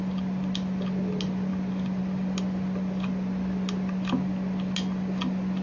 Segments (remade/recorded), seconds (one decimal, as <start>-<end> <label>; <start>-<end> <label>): 0.0-5.6 recorded